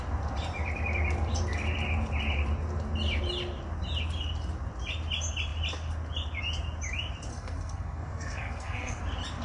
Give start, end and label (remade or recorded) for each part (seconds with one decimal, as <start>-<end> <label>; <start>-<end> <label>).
0.0-7.3 recorded; 7.3-9.0 remade; 9.0-9.4 recorded